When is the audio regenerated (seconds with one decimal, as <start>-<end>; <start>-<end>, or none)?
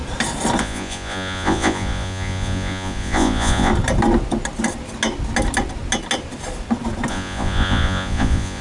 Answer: 0.6-3.7; 7.1-8.6